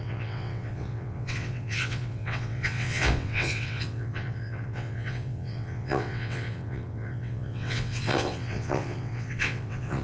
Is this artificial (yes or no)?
yes